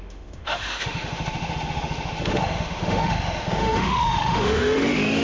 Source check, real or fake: fake